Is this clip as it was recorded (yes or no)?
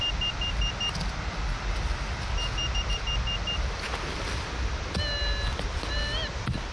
yes